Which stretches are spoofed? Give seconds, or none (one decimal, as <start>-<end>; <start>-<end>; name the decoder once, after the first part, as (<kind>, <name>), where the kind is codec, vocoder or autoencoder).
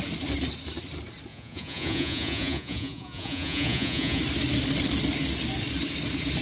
1.3-4.2 (vocoder, Vocos)